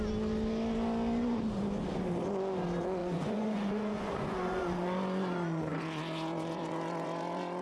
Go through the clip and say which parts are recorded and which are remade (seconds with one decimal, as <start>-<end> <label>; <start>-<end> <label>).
0.0-3.0 recorded; 3.0-7.6 remade